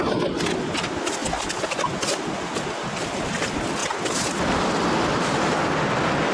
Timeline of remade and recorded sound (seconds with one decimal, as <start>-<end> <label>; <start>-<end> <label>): 0.0-6.3 recorded